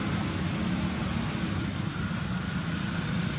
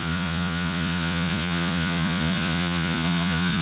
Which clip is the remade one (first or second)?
second